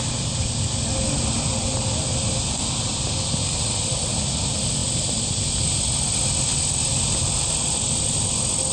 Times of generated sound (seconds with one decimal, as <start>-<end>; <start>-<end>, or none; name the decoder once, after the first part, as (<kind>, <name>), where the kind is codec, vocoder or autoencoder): none